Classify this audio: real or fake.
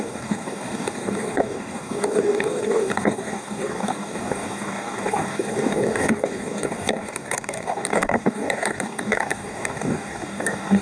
fake